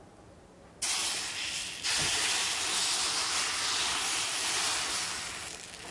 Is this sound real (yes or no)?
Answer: yes